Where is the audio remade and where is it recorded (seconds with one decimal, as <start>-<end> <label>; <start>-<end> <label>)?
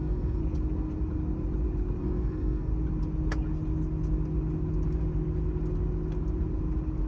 0.0-0.4 remade; 0.4-2.0 recorded; 2.0-2.7 remade; 2.7-7.1 recorded